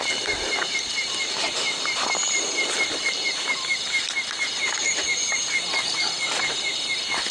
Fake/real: fake